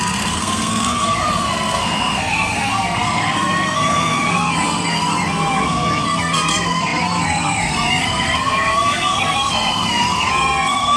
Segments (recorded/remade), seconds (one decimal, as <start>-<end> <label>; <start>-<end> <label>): 0.0-11.0 remade